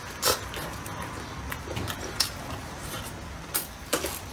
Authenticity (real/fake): real